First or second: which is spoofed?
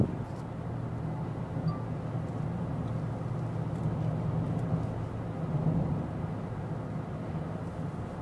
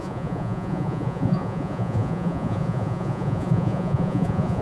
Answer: second